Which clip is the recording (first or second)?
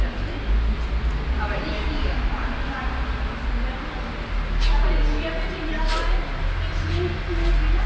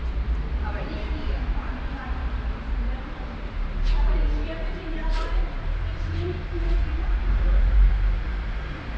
first